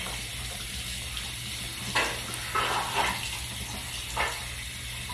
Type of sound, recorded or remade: recorded